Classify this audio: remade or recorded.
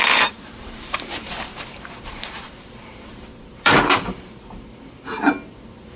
remade